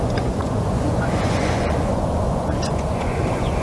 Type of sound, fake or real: fake